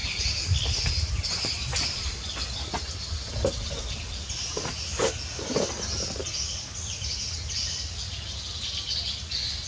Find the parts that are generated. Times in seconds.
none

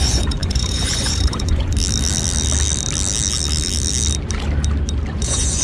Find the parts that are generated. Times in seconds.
0.0-1.7 (vocoder, Vocos); 5.1-5.6